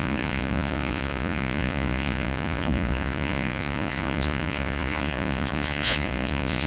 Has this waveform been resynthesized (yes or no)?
yes